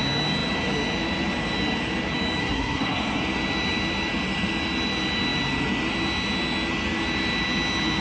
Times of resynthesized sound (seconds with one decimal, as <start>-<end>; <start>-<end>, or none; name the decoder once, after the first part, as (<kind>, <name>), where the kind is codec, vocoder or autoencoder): 2.4-3.2 (codec, SNAC)